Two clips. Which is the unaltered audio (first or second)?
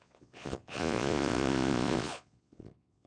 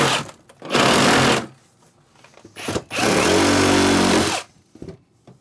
second